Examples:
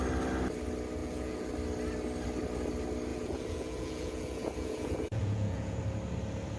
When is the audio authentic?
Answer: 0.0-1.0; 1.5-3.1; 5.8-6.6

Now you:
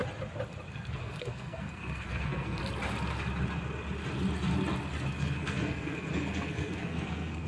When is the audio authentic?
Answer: 0.0-0.7; 2.6-5.1

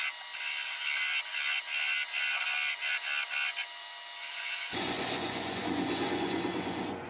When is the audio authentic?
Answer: 0.0-4.3